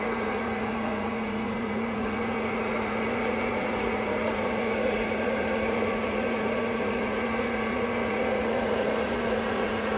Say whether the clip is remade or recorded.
remade